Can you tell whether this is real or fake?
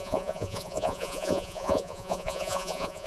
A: fake